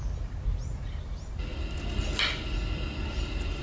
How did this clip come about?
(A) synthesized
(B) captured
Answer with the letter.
B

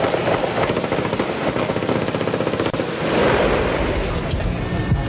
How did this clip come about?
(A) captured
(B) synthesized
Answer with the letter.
A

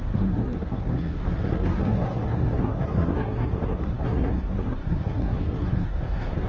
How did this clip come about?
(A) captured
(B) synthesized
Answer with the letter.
B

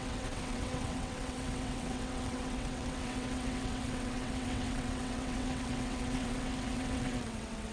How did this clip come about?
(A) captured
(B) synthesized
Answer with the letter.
B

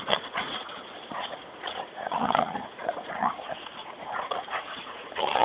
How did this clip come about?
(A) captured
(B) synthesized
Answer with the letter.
B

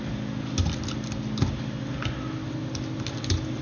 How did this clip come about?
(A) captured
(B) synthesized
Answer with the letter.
A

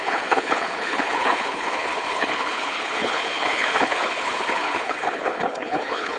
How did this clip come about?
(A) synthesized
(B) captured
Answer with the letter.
A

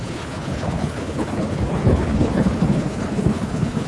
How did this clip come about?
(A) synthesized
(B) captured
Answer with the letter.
A